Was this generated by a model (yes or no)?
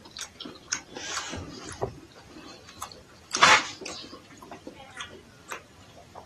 yes